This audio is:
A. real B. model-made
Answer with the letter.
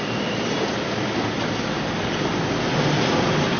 A